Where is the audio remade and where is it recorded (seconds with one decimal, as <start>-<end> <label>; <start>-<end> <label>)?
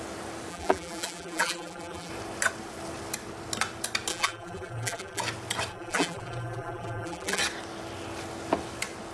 0.0-0.5 recorded; 0.5-2.1 remade; 2.1-4.1 recorded; 4.1-5.2 remade; 5.2-5.7 recorded; 5.7-7.4 remade; 7.4-9.1 recorded